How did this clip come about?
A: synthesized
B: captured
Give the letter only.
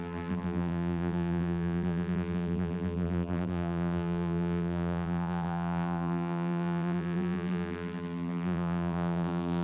A